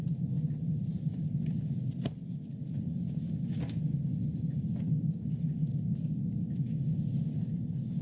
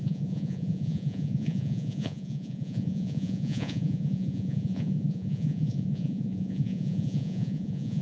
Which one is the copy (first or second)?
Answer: second